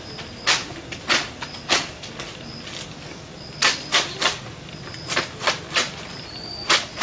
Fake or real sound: real